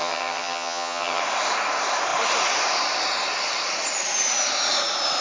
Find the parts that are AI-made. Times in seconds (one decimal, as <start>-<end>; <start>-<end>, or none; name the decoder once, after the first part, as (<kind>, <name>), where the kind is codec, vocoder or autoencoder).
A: 0.0-1.2 (vocoder, HiFi-GAN)